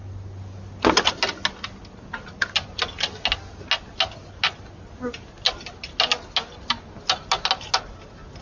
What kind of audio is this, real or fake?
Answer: real